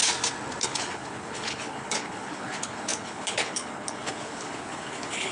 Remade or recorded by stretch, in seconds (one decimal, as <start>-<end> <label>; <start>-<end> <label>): 0.0-0.6 recorded; 0.6-5.3 remade